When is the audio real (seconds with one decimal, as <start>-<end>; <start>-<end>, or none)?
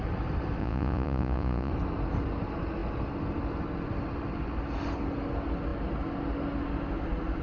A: 0.0-0.6; 1.7-7.4